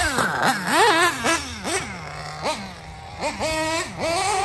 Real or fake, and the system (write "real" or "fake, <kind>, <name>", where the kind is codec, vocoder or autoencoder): real